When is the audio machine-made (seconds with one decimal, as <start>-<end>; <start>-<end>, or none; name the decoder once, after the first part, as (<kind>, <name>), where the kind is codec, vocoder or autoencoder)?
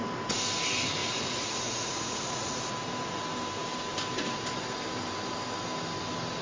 1.0-2.6 (vocoder, Vocos)